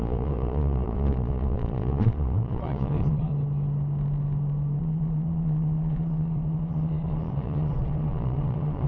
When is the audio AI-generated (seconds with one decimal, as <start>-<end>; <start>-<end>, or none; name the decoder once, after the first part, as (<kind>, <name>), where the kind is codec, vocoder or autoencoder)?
0.0-3.3 (vocoder, Vocos); 4.8-8.9